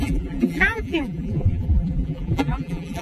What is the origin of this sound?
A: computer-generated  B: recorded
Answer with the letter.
A